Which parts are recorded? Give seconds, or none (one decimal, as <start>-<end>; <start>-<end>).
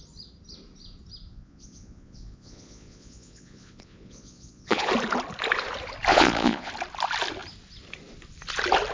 0.0-1.3; 4.9-6.1; 6.7-8.9